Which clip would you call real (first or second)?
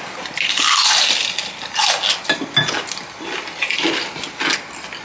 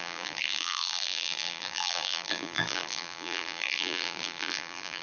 first